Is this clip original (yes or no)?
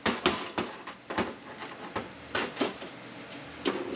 yes